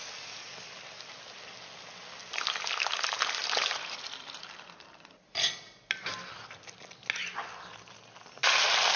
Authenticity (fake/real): real